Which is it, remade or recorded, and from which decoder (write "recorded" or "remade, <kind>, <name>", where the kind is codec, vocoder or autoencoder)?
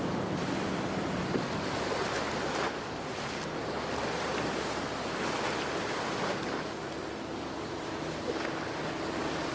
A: recorded